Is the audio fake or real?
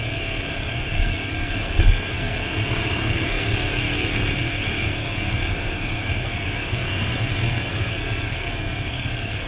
fake